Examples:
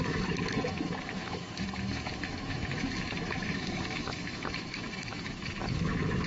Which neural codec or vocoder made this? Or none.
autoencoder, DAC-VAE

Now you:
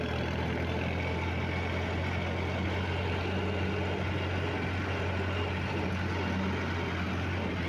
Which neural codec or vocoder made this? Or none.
none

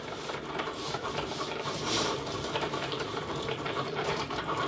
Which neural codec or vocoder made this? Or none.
vocoder, BigVGAN v2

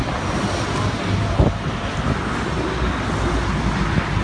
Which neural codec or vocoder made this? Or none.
none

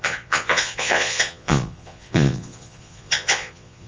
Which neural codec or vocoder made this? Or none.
vocoder, Vocos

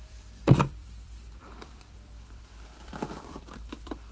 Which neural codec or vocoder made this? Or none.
vocoder, BigVGAN v2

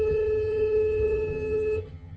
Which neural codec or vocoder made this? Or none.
vocoder, HiFi-GAN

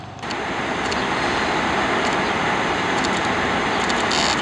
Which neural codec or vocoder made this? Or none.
none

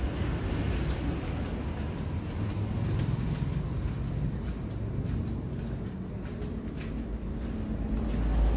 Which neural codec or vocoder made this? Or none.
none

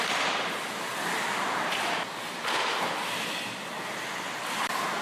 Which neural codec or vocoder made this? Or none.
none